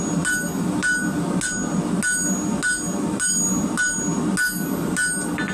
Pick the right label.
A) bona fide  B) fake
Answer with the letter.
A